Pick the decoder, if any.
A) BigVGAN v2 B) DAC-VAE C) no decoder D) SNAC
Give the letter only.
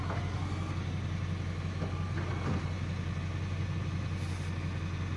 C